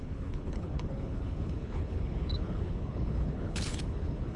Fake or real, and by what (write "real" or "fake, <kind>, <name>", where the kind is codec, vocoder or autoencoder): fake, codec, HILCodec